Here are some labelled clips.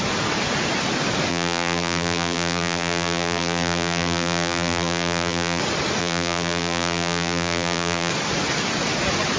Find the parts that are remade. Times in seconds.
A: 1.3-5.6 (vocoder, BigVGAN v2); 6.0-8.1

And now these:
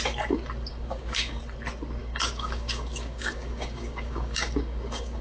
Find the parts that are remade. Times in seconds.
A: 0.7-1.4 (codec, DAC); 2.0-5.2

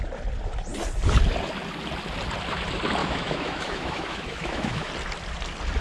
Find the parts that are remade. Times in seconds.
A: 3.0-4.9 (autoencoder, DAC-VAE)